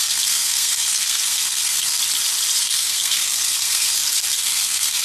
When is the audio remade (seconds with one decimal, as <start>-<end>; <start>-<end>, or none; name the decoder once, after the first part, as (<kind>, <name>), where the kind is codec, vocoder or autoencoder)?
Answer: 0.0-2.0 (codec, SNAC); 2.6-5.0